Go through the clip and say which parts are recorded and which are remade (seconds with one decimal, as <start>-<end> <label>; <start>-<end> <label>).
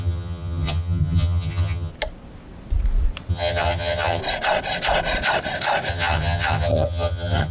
0.0-1.9 remade; 1.9-3.3 recorded; 3.3-4.2 remade; 4.2-5.9 recorded; 5.9-7.5 remade